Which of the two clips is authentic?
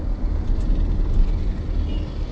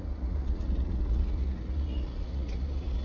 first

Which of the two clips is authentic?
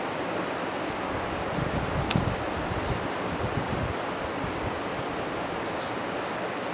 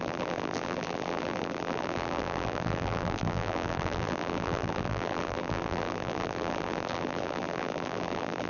first